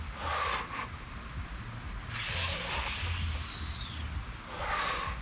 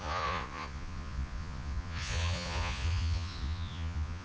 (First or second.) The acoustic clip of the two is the first